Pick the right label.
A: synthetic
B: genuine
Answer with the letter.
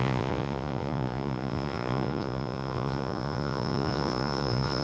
A